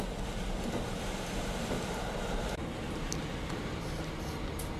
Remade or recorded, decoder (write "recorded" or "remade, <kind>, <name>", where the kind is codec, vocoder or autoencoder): recorded